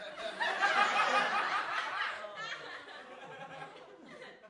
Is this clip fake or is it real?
fake